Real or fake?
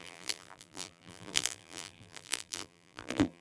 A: fake